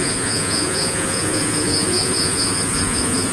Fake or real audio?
fake